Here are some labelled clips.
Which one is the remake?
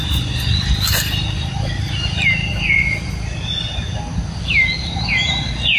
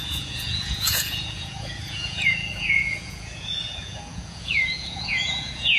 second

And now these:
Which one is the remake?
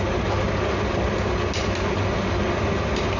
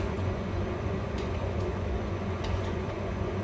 second